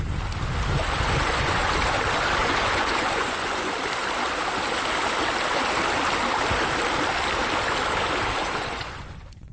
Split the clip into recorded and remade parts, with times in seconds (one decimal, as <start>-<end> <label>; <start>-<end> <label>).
0.0-0.8 recorded; 0.8-1.8 remade; 1.8-2.4 recorded; 2.4-3.7 remade; 3.7-8.4 recorded; 8.4-9.5 remade